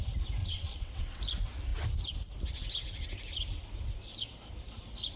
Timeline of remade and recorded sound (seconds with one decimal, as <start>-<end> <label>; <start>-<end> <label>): 0.0-0.4 recorded; 0.4-1.2 remade; 1.2-5.2 recorded